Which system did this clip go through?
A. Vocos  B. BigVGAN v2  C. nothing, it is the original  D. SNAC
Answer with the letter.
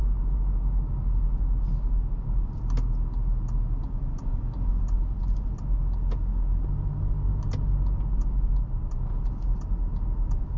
C